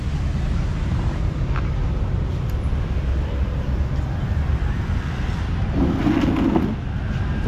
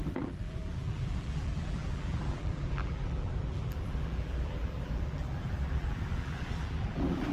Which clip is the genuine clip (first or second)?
first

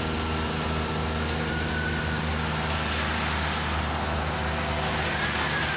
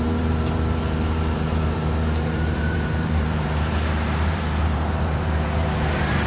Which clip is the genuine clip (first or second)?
first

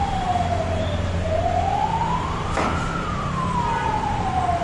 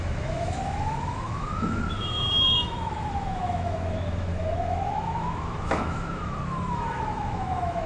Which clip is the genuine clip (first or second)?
first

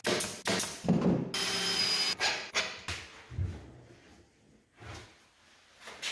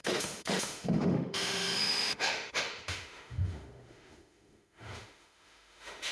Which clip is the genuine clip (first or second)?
first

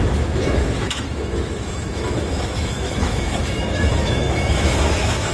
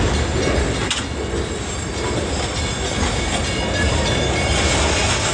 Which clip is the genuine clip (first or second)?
second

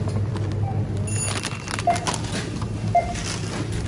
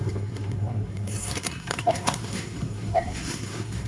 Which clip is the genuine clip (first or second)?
first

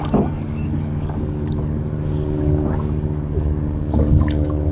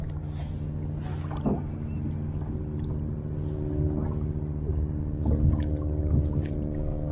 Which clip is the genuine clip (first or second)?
second